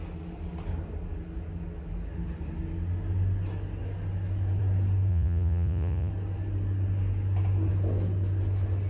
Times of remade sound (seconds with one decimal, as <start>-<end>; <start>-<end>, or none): 5.1-6.1